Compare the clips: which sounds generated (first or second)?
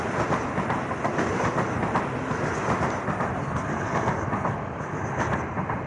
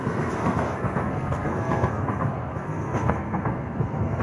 second